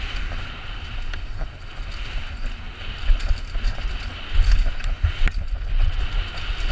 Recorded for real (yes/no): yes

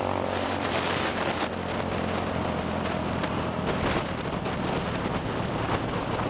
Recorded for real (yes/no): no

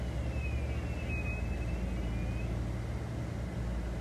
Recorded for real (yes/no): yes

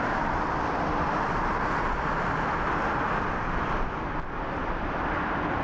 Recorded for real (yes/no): yes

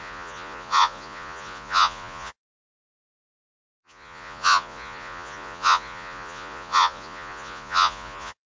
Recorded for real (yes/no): no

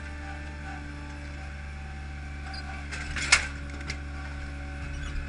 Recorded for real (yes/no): yes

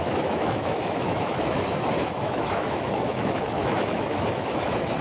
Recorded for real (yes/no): no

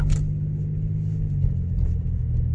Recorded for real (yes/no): yes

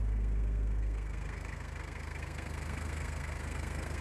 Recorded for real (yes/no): no